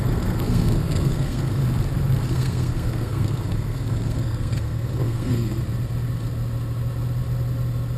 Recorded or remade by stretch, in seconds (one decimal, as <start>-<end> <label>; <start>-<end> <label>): 0.0-1.6 remade; 1.6-2.3 recorded; 2.3-5.6 remade; 5.6-8.0 recorded